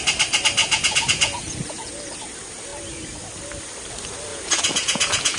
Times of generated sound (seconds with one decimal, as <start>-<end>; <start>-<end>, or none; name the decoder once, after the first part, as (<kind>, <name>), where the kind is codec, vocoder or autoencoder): 0.6-1.9 (vocoder, Vocos); 4.3-5.4